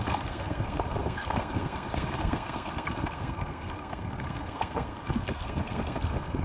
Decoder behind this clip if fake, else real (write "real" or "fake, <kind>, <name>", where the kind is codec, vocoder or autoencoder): fake, codec, SNAC